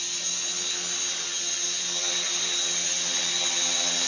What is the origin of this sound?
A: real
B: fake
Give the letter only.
A